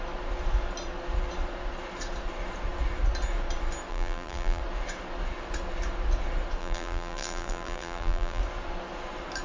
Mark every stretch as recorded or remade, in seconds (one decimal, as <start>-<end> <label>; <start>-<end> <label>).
0.0-3.9 recorded; 3.9-4.6 remade; 4.6-6.6 recorded; 6.6-8.4 remade; 8.4-9.4 recorded